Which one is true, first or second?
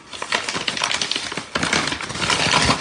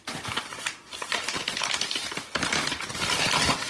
first